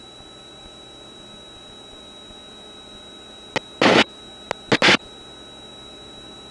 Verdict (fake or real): real